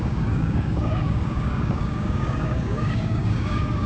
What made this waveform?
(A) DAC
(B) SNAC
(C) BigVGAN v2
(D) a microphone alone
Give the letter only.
A